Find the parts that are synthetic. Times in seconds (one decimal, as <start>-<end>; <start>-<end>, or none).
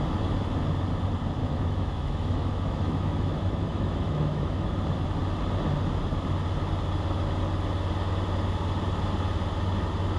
1.4-4.7